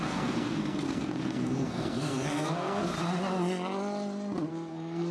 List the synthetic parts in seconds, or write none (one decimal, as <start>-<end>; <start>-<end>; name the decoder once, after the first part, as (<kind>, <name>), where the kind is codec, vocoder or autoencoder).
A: 0.0-2.9 (codec, SNAC); 4.5-5.1